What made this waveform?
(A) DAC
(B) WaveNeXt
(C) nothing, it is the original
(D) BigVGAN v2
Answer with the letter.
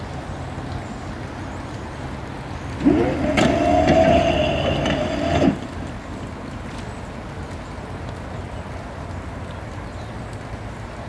C